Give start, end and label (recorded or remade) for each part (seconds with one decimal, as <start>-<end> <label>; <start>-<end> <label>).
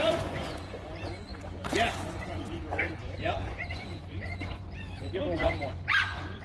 0.0-6.4 remade